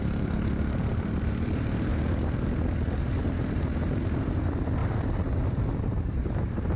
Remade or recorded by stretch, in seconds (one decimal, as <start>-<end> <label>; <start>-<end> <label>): 0.0-1.9 remade; 1.9-3.0 recorded; 3.0-6.8 remade